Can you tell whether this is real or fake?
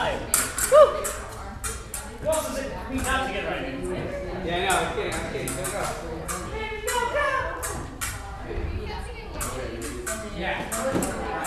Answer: real